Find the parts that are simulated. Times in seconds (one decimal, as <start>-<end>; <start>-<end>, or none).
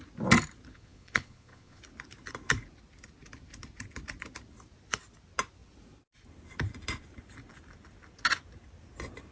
0.7-1.8